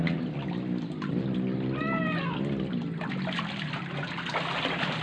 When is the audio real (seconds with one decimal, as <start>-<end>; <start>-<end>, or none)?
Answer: 0.0-5.0